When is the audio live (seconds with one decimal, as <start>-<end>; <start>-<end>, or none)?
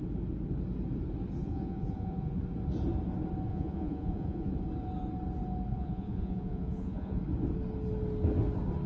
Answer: 0.0-1.4; 2.4-3.5; 4.5-5.7; 7.2-8.9